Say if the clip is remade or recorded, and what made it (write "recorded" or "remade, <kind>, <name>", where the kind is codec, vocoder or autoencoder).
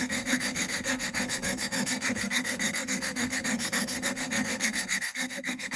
remade, codec, SNAC